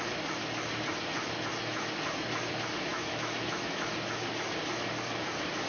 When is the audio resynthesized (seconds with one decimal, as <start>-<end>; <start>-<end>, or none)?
2.9-3.9